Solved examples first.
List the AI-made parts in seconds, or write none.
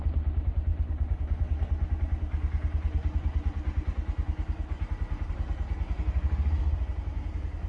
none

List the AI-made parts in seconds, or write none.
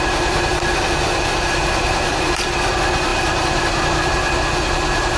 0.5-2.7 (vocoder, BigVGAN v2)